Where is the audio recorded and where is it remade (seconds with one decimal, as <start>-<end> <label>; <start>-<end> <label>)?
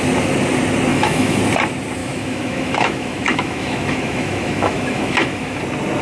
0.0-0.9 recorded; 0.9-1.4 remade; 1.4-2.0 recorded; 2.0-5.6 remade; 5.6-6.0 recorded